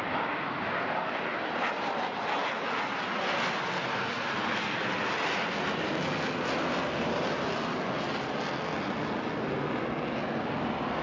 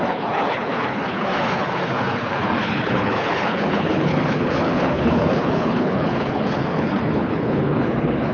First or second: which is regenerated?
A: second